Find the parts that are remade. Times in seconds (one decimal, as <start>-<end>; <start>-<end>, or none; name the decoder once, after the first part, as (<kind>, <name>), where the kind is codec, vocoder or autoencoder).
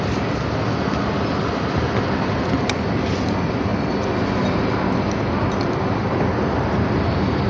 none